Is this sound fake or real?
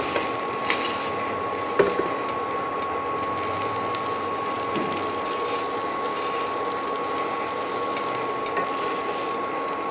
real